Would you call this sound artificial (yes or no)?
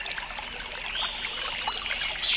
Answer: no